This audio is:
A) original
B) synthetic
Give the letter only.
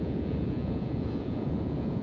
B